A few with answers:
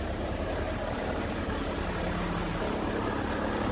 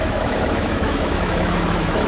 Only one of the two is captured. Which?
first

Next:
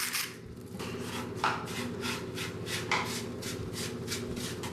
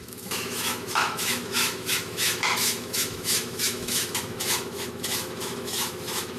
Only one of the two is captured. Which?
first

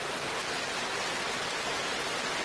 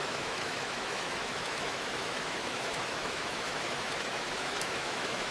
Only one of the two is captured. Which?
first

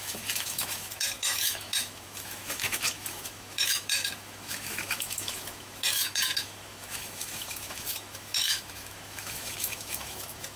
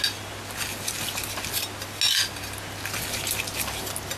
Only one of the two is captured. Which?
second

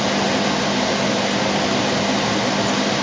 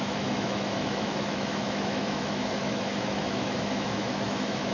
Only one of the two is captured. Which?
first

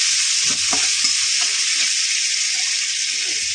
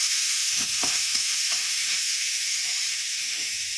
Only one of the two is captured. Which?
first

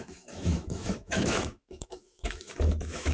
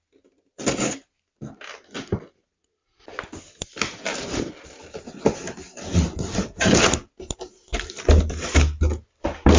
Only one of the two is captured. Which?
second